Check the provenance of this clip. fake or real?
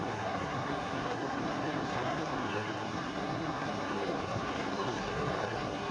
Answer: fake